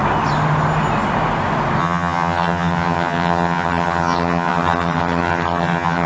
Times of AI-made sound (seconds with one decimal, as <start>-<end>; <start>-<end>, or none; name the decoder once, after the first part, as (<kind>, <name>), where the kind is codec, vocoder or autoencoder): 1.8-6.1 (vocoder, HiFi-GAN)